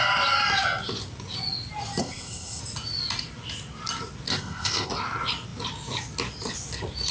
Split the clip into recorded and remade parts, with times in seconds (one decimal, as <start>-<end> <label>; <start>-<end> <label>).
0.0-2.0 recorded; 2.0-2.6 remade; 2.6-4.3 recorded; 4.3-4.9 remade; 4.9-7.1 recorded